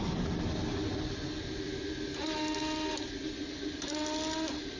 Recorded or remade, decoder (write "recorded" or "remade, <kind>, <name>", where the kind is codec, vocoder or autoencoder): recorded